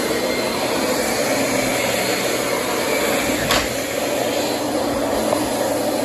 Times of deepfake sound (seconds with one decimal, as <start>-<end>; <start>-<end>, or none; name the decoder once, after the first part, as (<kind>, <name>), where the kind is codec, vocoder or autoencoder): none